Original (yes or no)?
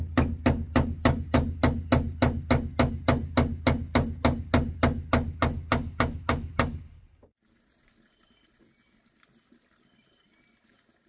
yes